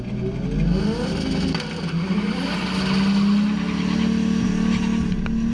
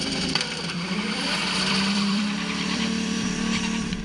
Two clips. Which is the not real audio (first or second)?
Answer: second